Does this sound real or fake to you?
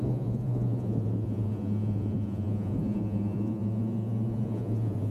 fake